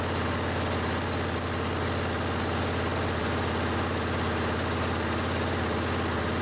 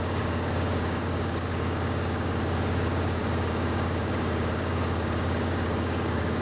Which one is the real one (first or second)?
first